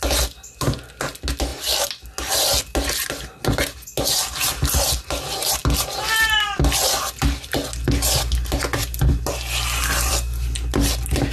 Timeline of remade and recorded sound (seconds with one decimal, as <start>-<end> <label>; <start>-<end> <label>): 0.0-11.3 recorded